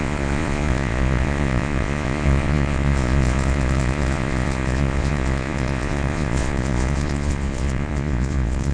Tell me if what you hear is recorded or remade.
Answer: remade